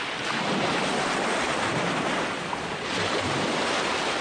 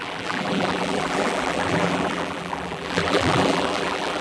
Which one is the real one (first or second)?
first